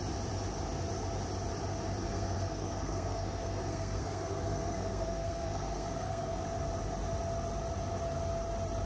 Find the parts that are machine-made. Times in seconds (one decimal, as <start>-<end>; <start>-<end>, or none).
2.1-6.4